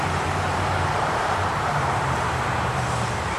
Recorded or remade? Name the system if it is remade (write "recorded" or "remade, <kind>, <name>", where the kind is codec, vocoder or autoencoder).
remade, vocoder, BigVGAN v2